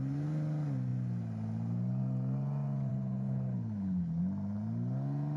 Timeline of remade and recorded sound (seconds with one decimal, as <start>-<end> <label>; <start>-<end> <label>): 0.0-2.9 recorded; 2.9-4.2 remade; 4.2-5.4 recorded

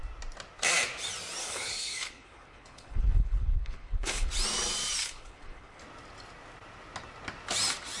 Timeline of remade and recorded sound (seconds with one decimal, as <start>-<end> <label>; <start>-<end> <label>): 0.0-1.4 recorded; 1.4-4.3 remade; 4.3-5.0 recorded; 5.0-5.8 remade; 5.8-8.0 recorded

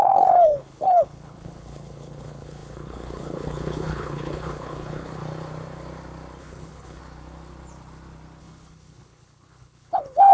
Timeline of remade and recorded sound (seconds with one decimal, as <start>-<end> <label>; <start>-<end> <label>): 0.0-5.2 remade; 5.2-6.4 recorded; 6.4-7.0 remade; 7.0-8.4 recorded; 8.4-10.3 remade

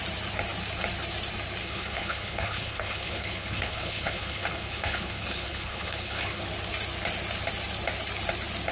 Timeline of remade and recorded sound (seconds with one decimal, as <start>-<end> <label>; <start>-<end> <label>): 0.0-1.6 recorded; 1.6-6.4 remade; 6.4-8.7 recorded

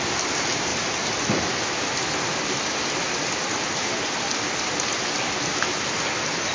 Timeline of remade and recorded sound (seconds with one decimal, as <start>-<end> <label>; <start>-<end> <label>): 0.0-6.5 recorded

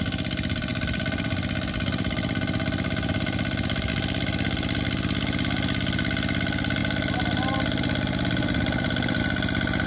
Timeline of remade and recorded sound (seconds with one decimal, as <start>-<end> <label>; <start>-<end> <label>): 0.0-9.9 recorded

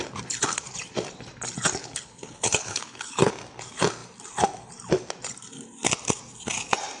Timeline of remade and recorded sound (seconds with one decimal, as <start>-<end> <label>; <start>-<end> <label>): 0.0-1.8 recorded; 1.8-3.3 remade; 3.3-7.0 recorded

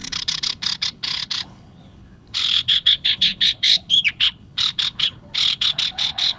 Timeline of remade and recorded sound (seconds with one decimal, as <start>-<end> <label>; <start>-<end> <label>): 0.0-6.4 remade